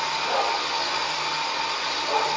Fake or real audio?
real